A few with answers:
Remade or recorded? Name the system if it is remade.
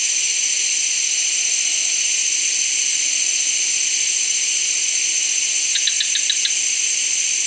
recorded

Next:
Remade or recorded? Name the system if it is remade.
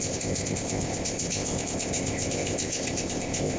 remade, codec, ZipCodec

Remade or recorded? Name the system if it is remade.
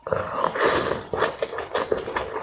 recorded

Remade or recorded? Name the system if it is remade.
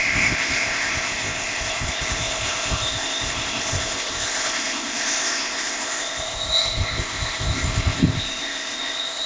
remade, codec, ZipCodec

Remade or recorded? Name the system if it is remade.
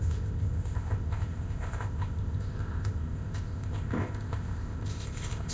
remade, codec, ZipCodec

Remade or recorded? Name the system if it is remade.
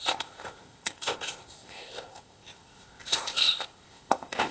remade, codec, ZipCodec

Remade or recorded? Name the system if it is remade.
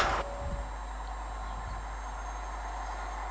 recorded